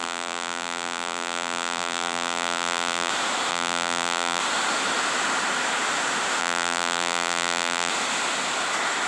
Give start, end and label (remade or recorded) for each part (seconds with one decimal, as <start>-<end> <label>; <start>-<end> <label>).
0.0-3.1 remade; 3.1-3.5 recorded; 3.5-4.4 remade; 4.4-6.4 recorded; 6.4-7.9 remade; 7.9-9.1 recorded